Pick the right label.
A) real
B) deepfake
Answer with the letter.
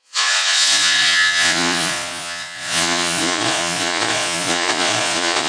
B